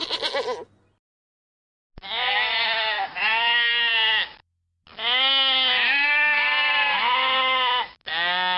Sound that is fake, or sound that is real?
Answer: real